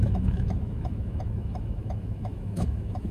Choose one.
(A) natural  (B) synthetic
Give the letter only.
B